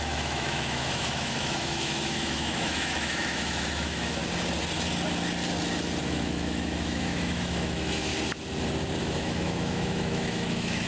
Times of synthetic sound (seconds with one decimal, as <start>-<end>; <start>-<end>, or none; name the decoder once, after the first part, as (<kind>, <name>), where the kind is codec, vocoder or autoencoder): 0.0-4.2 (autoencoder, DAC-VAE); 6.0-8.1; 9.0-10.9